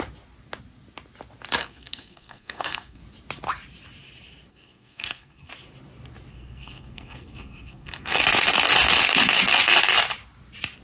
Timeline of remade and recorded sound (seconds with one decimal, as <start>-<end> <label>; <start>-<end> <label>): 0.0-1.6 recorded; 1.6-3.0 remade; 3.0-4.5 recorded; 4.5-5.5 remade; 5.5-6.3 recorded; 6.3-8.2 remade; 8.2-10.8 recorded